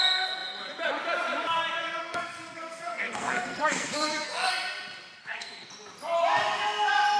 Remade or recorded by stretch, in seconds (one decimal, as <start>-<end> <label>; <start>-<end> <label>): 0.0-2.0 recorded; 2.0-4.5 remade; 4.5-5.2 recorded; 5.2-5.7 remade; 5.7-7.2 recorded